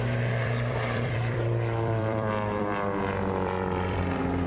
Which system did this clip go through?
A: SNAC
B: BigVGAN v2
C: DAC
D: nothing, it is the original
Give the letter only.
B